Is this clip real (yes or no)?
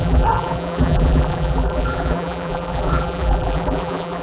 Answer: no